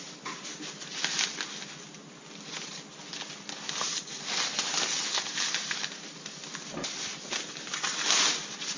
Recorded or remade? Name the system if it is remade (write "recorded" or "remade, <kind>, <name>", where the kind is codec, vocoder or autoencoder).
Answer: recorded